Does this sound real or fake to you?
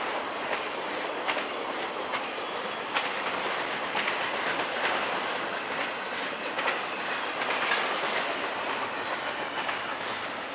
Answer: real